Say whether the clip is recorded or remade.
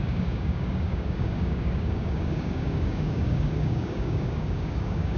remade